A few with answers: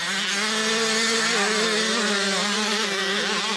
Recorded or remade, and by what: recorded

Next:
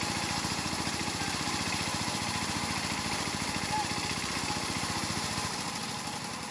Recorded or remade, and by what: remade, vocoder, BigVGAN v2